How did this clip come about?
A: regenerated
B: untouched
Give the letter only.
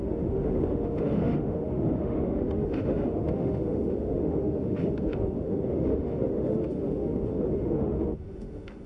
A